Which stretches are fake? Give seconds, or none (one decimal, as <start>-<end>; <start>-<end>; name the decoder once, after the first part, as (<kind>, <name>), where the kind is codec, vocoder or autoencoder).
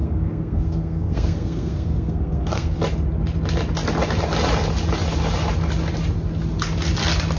0.0-2.8 (codec, SNAC)